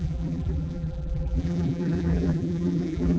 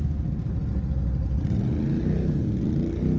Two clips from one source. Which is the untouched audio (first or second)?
second